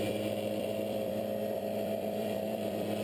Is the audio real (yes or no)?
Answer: no